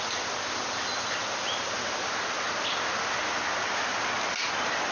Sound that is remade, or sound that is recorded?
recorded